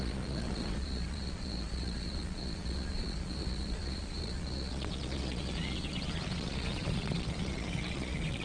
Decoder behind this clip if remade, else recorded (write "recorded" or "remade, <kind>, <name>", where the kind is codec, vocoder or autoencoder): remade, vocoder, Vocos